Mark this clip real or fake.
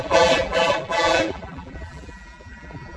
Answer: fake